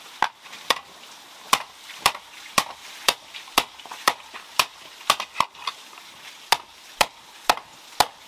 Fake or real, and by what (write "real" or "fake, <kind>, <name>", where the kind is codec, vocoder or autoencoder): real